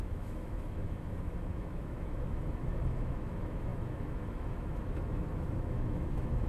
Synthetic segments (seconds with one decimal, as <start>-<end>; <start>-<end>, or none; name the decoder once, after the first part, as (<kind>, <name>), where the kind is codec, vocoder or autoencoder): 0.0-6.5 (autoencoder, DAC-VAE)